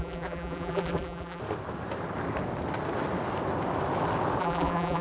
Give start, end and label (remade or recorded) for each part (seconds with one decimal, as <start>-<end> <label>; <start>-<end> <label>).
0.0-1.4 remade; 1.4-4.4 recorded; 4.4-5.0 remade